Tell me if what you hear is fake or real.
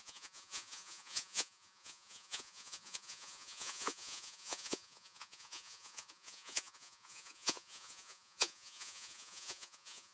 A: fake